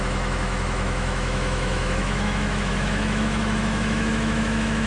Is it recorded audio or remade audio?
remade